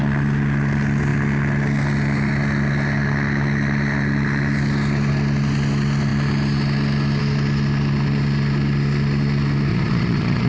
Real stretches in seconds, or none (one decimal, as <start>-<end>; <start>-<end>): 0.0-9.7